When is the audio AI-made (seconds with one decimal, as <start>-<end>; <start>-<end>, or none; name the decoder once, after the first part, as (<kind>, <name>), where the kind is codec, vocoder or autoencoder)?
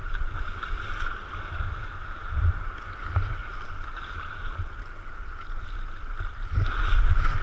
0.0-0.7 (vocoder, BigVGAN v2); 3.4-4.9